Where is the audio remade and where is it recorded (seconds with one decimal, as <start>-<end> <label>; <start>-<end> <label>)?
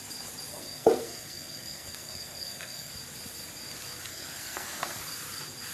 0.0-0.5 recorded; 0.5-2.9 remade; 2.9-4.1 recorded; 4.1-5.0 remade; 5.0-5.7 recorded